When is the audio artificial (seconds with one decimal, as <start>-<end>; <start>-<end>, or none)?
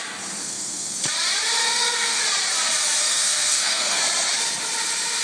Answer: 0.4-1.0; 1.6-2.2; 3.0-4.0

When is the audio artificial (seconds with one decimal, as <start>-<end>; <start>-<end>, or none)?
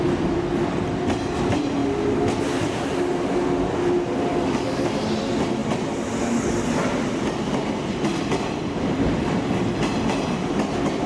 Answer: 4.3-4.9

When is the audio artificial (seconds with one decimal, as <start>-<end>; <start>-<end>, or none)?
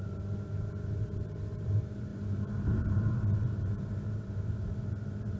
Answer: 0.0-5.4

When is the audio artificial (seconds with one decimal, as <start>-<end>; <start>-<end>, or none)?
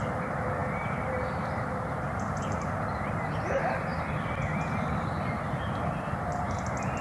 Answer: 0.0-3.9; 6.0-7.0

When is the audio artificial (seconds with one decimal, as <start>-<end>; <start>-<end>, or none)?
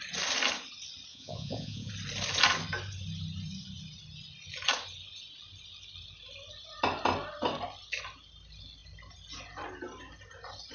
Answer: 1.1-1.9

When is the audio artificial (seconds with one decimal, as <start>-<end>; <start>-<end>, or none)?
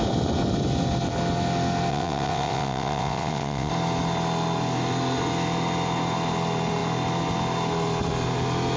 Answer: 1.9-3.7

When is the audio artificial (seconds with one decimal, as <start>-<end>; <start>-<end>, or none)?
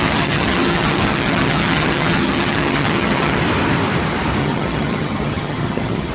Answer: 0.0-3.4; 4.4-6.1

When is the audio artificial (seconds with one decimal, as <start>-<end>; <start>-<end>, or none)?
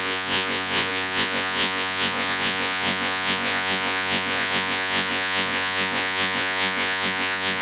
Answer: 0.0-7.6